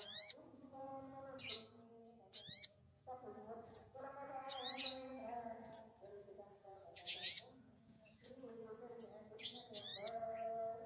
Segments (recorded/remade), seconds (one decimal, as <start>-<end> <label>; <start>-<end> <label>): 0.0-0.9 remade; 0.9-1.5 recorded; 1.5-10.9 remade